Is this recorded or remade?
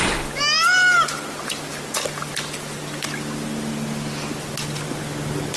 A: recorded